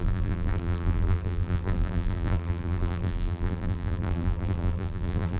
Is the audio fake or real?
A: fake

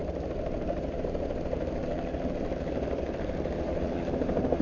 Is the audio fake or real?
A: fake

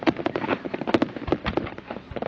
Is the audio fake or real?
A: real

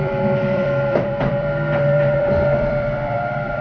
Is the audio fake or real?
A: fake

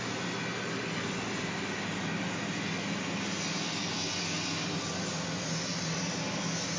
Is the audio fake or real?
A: real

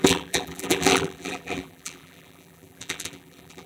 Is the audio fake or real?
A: fake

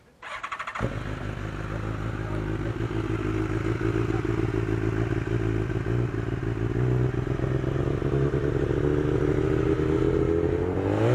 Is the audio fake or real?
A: real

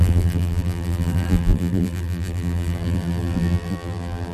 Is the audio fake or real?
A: fake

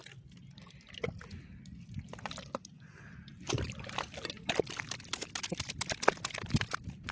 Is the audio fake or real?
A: real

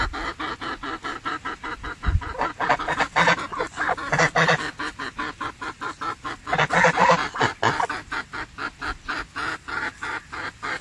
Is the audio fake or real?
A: real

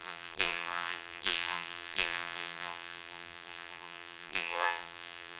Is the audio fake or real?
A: fake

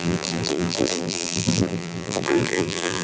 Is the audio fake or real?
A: fake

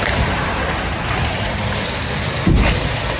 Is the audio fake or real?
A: fake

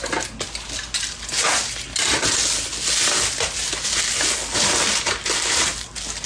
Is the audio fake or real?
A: real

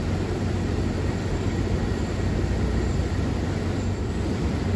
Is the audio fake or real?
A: fake